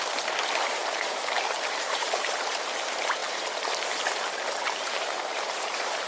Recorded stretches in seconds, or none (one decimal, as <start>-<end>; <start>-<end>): none